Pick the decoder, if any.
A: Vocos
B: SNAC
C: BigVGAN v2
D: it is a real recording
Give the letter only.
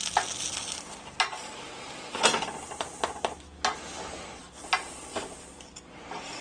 D